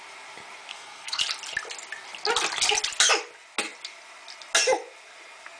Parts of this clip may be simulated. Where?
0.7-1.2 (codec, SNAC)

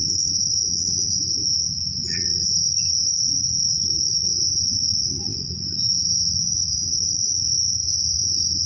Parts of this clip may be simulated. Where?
0.0-8.7 (vocoder, Vocos)

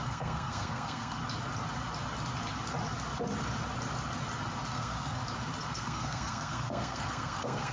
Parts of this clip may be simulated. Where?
0.0-1.2 (codec, SNAC); 4.7-5.2; 5.7-7.7

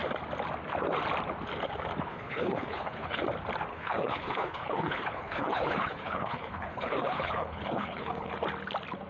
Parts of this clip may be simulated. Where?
2.1-3.2 (codec, HILCodec); 3.7-8.3